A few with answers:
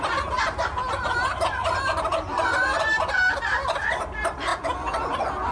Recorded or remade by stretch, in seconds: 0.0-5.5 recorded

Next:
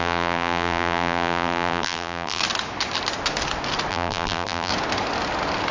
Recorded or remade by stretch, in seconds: 0.0-2.4 remade; 2.4-3.9 recorded; 3.9-4.7 remade; 4.7-5.7 recorded

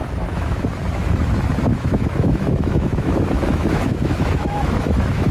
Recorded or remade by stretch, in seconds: 0.0-0.6 remade; 0.6-1.7 recorded; 1.7-5.3 remade

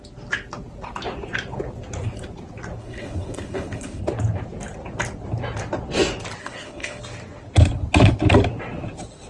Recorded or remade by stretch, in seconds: 0.0-2.8 recorded; 2.8-4.0 remade; 4.0-6.4 recorded; 6.4-7.0 remade; 7.0-9.3 recorded

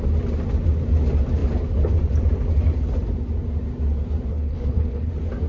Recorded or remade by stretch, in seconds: 0.0-4.3 recorded; 4.3-5.1 remade; 5.1-5.5 recorded

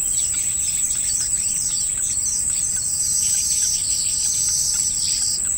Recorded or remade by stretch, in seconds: 0.0-1.9 remade; 1.9-2.7 recorded; 2.7-3.8 remade; 3.8-5.6 recorded

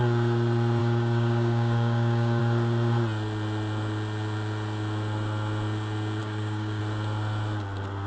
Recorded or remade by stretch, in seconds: 0.0-0.8 recorded; 0.8-2.4 remade; 2.4-6.2 recorded; 6.2-6.8 remade; 6.8-8.1 recorded

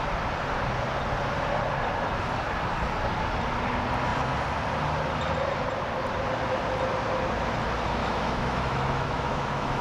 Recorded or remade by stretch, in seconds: 0.0-8.0 recorded; 8.0-9.8 remade